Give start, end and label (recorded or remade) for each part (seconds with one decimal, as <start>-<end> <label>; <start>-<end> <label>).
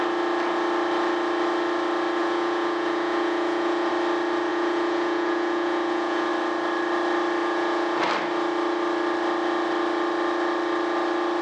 0.0-2.2 recorded; 2.2-3.9 remade; 3.9-4.5 recorded; 4.5-6.3 remade; 6.3-7.4 recorded; 7.4-8.0 remade; 8.0-11.4 recorded